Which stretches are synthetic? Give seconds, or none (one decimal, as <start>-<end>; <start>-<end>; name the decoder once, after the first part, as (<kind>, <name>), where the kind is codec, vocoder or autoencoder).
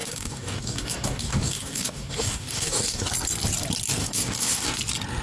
0.0-3.1 (codec, DAC); 4.0-4.8